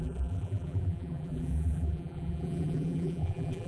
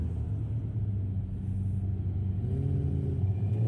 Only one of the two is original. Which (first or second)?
second